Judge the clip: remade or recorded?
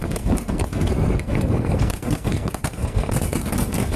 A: remade